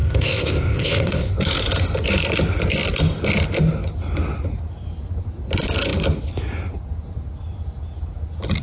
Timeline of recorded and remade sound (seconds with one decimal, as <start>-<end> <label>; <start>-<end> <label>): 0.0-1.3 remade; 1.3-8.6 recorded